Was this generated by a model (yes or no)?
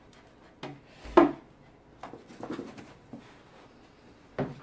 no